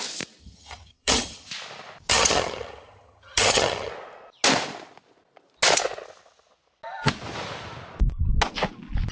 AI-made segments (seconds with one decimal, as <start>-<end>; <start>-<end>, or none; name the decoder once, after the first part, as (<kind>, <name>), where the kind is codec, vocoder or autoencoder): 0.4-1.5 (vocoder, HiFi-GAN); 2.1-3.9